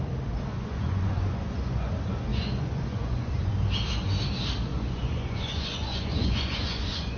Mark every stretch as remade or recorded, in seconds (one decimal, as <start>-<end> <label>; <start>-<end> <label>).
0.0-0.5 recorded; 0.5-1.9 remade; 1.9-2.3 recorded; 2.3-3.5 remade; 3.5-4.7 recorded; 4.7-7.2 remade